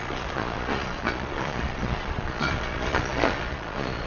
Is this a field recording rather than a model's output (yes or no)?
no